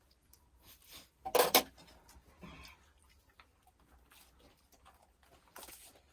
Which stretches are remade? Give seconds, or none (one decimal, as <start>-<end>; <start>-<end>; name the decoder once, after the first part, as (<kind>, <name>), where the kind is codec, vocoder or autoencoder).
none